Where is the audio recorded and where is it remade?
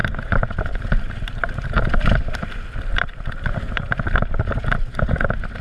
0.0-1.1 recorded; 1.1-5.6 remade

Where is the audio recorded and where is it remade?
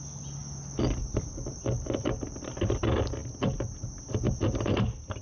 0.0-5.2 recorded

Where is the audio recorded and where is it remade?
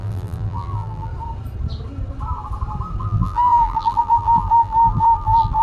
0.0-1.1 remade; 1.1-3.0 recorded; 3.0-5.6 remade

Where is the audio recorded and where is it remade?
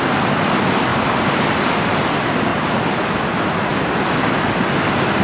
0.0-0.9 recorded; 0.9-1.5 remade; 1.5-2.5 recorded; 2.5-3.2 remade; 3.2-5.2 recorded